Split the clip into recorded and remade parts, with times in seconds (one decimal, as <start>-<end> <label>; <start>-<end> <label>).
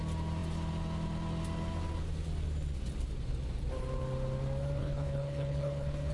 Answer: 0.0-4.8 recorded; 4.8-6.1 remade